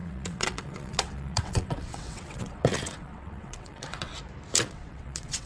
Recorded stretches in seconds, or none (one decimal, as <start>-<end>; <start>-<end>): 4.1-4.6